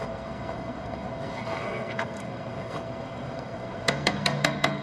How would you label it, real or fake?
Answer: fake